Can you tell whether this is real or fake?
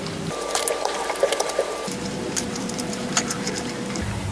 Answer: fake